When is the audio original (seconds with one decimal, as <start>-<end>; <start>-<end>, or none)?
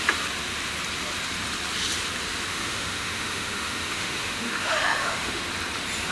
0.0-2.5; 5.4-6.1